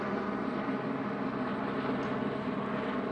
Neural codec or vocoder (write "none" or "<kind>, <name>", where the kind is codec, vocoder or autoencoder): none